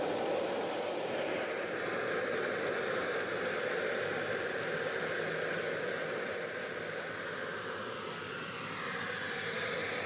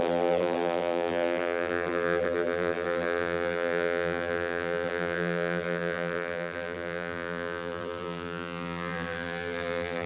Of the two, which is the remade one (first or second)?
second